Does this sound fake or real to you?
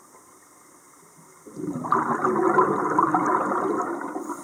real